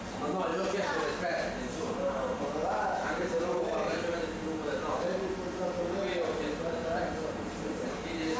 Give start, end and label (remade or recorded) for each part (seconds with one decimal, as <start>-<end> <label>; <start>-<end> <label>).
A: 0.0-0.5 recorded; 0.5-1.1 remade; 1.1-2.6 recorded; 2.6-4.0 remade; 4.0-6.8 recorded; 6.8-7.9 remade; 7.9-8.4 recorded